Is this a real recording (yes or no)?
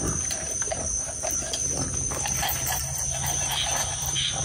no